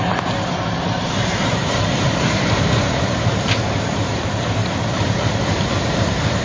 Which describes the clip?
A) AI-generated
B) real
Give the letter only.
A